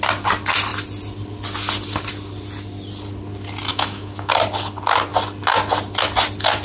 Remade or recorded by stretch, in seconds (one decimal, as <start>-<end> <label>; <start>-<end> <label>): 0.0-3.7 recorded; 3.7-4.3 remade; 4.3-6.6 recorded